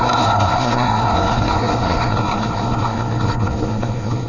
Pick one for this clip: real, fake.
fake